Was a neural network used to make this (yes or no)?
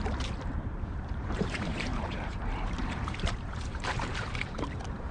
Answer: yes